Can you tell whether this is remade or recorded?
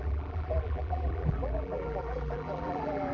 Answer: remade